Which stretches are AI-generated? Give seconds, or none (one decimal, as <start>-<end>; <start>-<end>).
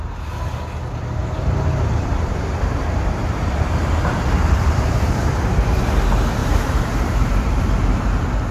1.2-5.9; 6.4-7.6